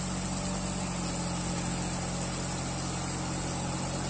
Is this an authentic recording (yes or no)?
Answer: yes